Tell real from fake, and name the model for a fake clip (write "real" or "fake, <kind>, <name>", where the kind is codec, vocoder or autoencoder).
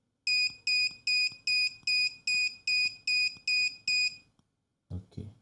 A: real